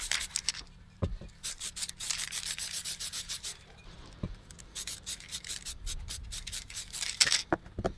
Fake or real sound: fake